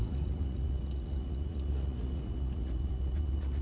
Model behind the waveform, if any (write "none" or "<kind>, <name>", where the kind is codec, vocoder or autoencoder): vocoder, Vocos